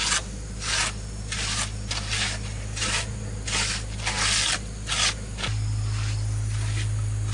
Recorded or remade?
recorded